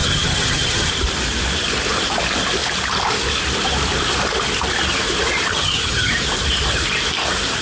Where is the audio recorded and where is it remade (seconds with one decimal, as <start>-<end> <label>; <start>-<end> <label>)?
0.0-0.9 remade; 0.9-5.5 recorded; 5.5-6.1 remade; 6.1-7.6 recorded